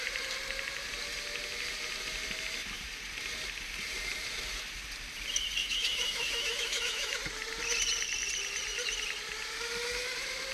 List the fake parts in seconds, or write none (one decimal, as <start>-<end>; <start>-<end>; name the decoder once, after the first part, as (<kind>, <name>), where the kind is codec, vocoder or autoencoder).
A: 5.6-7.2 (autoencoder, DAC-VAE)